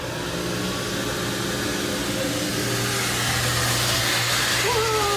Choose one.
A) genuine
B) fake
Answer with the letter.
A